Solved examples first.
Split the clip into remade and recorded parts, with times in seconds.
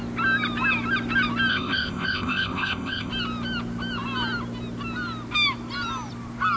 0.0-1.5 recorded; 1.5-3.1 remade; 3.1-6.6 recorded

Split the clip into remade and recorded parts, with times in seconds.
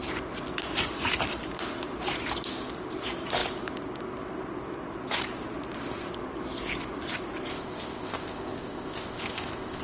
0.0-7.5 recorded; 7.5-9.8 remade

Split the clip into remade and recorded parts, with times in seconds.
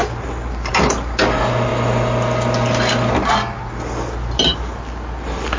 0.0-5.6 recorded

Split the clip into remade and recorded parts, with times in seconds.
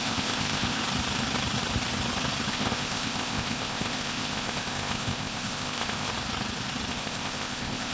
0.0-0.8 remade; 0.8-2.5 recorded; 2.5-6.1 remade; 6.1-6.9 recorded; 6.9-7.9 remade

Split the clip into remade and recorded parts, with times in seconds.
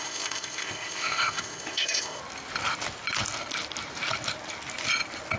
0.0-2.2 remade; 2.2-5.4 recorded